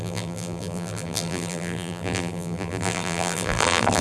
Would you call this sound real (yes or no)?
no